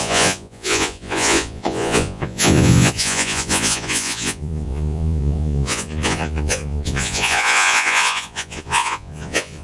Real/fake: fake